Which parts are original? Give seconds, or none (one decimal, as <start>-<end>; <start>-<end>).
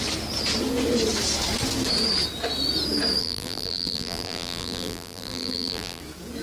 0.0-3.2; 6.0-6.4